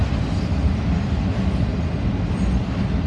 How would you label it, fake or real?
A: real